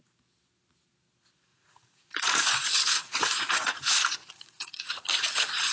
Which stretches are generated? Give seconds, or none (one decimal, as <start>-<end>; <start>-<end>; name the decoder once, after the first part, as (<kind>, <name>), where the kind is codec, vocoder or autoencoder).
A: 1.5-4.9 (vocoder, Vocos)